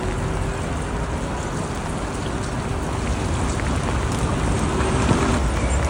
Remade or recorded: recorded